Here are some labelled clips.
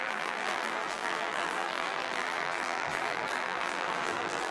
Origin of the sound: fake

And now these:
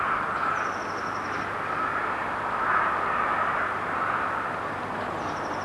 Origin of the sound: real